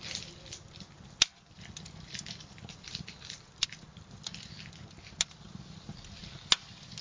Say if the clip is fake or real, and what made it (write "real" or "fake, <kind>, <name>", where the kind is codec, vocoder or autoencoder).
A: real